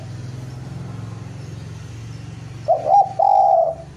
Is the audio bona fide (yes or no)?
yes